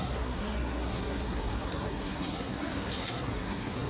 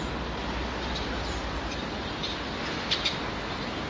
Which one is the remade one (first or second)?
first